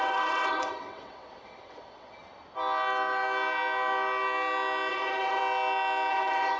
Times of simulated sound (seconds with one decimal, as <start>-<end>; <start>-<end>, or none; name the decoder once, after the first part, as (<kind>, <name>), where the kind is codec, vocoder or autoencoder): 0.0-2.2 (vocoder, WaveNeXt); 4.9-5.4; 6.1-6.6